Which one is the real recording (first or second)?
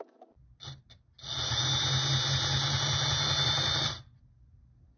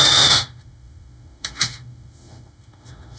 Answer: first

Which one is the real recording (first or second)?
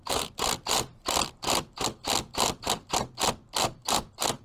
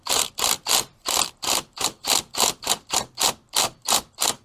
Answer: first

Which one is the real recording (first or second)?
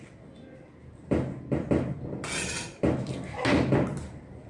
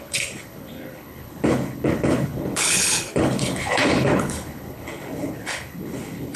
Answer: first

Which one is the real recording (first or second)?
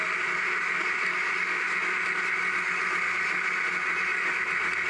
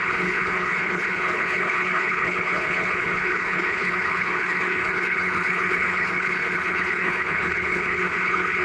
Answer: first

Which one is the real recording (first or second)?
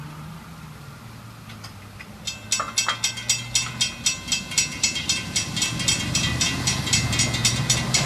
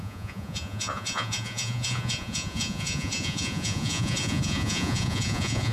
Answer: first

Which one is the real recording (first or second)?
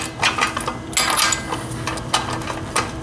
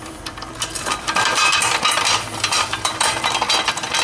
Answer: first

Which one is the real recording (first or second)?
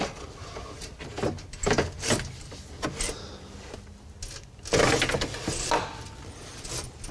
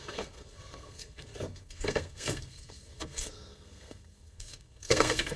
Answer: first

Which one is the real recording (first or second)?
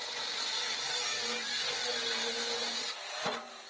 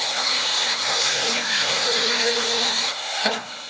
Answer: first